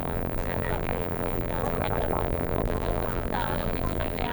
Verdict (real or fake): fake